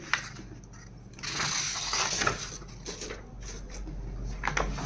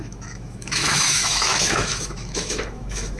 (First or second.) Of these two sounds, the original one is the first